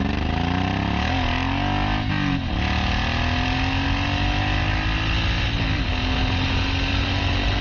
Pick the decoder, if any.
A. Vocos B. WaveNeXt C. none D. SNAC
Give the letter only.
C